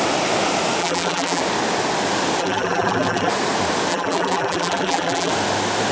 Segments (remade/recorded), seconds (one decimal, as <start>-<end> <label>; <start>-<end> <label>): 0.0-0.8 recorded; 0.8-1.4 remade; 1.4-2.4 recorded; 2.4-3.3 remade; 3.3-3.9 recorded; 3.9-5.3 remade; 5.3-5.9 recorded